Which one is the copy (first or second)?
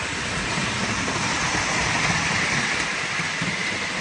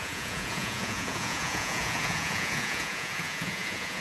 second